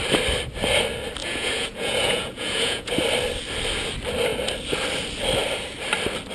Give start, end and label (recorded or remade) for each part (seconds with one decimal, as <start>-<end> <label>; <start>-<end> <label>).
0.0-1.2 recorded; 1.2-2.9 remade; 2.9-6.3 recorded